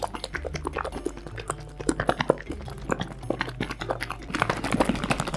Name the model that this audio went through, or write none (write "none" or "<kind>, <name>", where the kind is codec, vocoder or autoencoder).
none